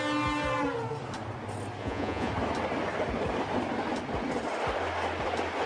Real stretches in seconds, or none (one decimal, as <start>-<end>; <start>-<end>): 0.0-1.8; 2.3-5.7